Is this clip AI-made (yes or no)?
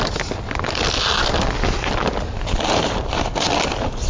no